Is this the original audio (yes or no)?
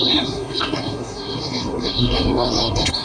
no